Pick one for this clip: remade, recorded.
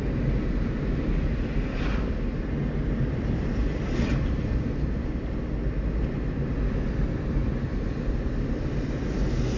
recorded